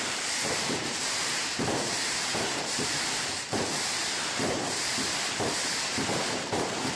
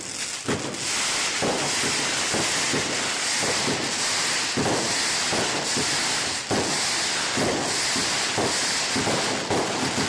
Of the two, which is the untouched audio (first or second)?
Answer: second